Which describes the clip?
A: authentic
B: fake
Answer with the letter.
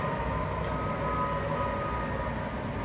A